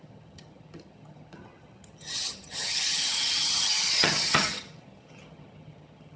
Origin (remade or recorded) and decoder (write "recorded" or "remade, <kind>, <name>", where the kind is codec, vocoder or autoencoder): remade, vocoder, HiFi-GAN